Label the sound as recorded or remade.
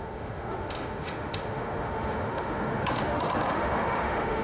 remade